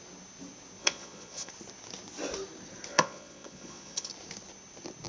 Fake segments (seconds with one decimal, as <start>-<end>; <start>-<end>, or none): 0.8-1.5; 2.9-4.1